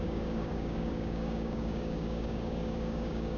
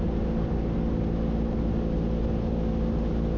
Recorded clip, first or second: second